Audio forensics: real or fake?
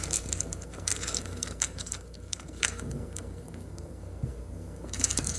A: fake